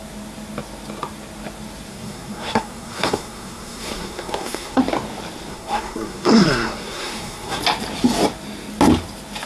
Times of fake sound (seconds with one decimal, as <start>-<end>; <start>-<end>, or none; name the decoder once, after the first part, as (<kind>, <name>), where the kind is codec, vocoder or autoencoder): 1.9-4.8 (codec, SNAC); 5.5-7.6